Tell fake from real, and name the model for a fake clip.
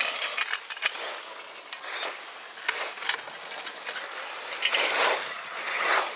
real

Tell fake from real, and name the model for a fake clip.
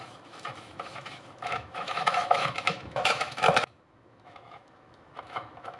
fake, autoencoder, DAC-VAE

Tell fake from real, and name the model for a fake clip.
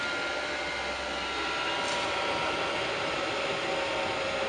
real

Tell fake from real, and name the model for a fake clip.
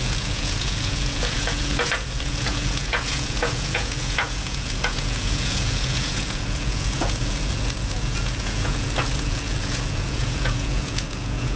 fake, vocoder, Vocos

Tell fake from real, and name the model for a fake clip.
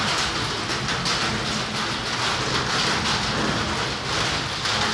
real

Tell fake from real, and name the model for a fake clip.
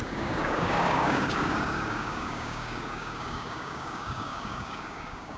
fake, codec, DAC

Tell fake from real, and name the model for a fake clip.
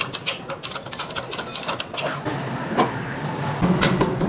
real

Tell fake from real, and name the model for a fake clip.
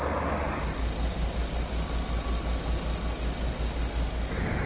real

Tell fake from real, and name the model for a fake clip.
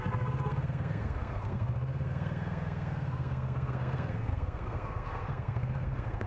fake, codec, SNAC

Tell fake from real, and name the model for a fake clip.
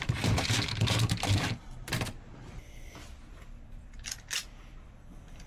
fake, vocoder, BigVGAN v2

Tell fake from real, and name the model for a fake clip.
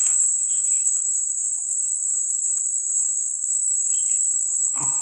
fake, codec, SNAC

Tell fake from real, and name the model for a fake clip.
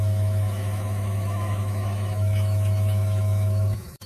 fake, autoencoder, DAC-VAE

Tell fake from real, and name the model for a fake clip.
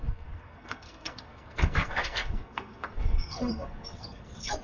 fake, codec, SNAC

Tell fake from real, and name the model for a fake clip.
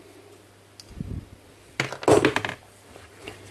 real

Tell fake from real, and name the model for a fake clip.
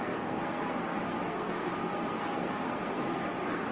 fake, codec, SNAC